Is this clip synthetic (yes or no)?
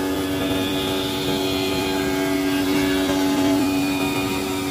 yes